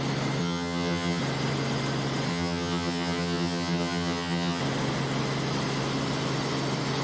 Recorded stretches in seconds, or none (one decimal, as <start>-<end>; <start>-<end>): 0.0-0.4; 1.2-2.3; 4.6-7.0